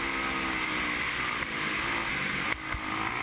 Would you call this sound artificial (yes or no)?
no